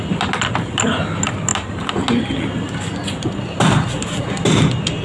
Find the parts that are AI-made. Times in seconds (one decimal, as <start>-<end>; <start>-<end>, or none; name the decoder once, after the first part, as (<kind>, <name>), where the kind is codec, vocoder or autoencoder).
none